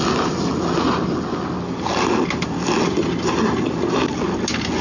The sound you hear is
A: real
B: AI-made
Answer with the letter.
A